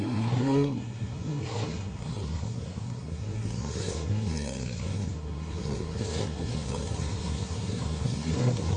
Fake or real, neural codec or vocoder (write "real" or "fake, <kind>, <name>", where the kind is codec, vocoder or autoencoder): fake, codec, SNAC